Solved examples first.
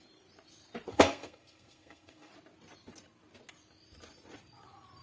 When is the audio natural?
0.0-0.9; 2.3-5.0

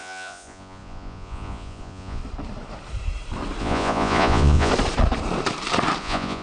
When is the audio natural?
2.2-3.6; 4.7-6.0

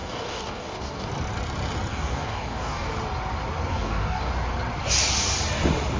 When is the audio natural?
1.1-1.9; 2.9-3.7; 4.3-6.0

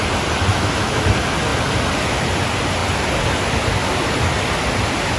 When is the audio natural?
0.0-0.5; 1.1-5.2